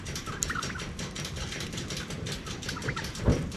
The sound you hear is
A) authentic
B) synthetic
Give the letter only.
A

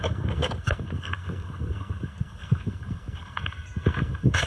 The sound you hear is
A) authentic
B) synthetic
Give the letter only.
B